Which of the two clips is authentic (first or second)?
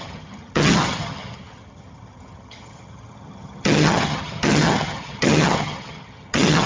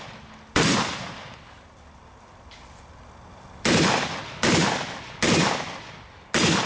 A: second